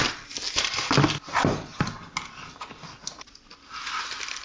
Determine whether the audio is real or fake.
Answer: real